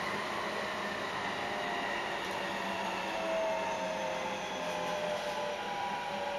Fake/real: real